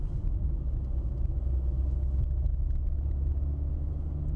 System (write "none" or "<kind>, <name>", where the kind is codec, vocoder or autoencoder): none